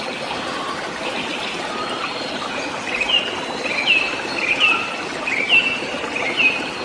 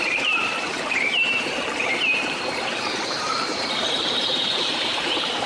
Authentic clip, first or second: first